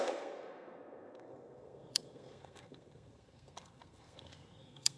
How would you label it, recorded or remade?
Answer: remade